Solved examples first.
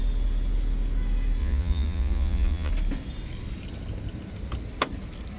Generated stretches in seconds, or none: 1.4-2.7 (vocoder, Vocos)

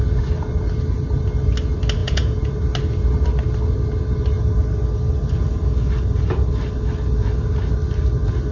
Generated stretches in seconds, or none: 2.0-2.5 (vocoder, Vocos)